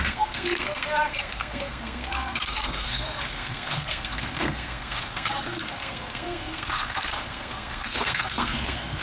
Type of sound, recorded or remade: remade